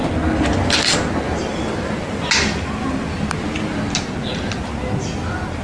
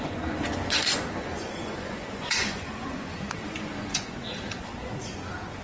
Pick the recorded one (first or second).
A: first